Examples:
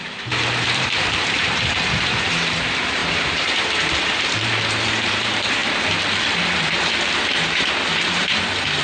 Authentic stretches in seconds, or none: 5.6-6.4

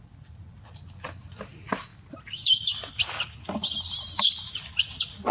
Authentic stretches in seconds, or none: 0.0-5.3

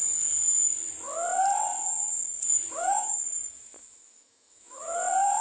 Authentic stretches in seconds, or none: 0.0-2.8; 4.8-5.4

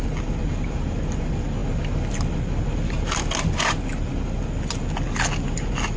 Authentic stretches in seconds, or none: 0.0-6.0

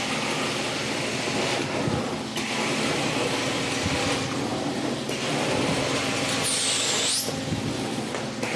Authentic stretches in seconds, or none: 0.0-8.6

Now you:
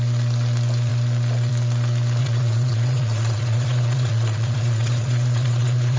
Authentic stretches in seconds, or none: 0.0-2.2

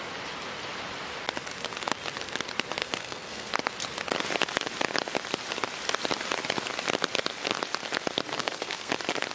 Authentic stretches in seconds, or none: 0.0-2.8; 3.5-8.4; 8.9-9.3